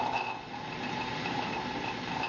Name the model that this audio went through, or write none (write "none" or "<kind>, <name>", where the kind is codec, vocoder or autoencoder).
none